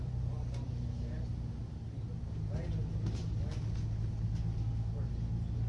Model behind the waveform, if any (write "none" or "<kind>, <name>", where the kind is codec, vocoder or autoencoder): none